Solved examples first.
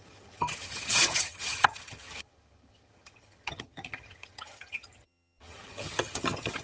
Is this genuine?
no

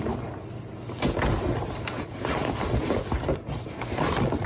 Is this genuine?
yes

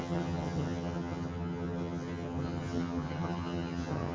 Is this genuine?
no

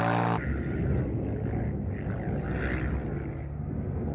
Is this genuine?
yes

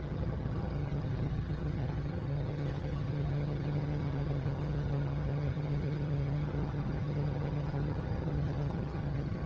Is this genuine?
no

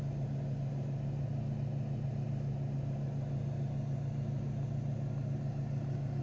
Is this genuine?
yes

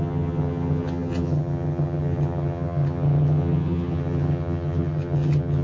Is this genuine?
no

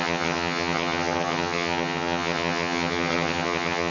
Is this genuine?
no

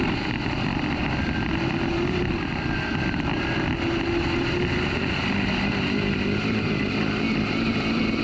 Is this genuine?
yes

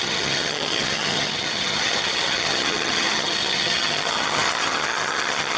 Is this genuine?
no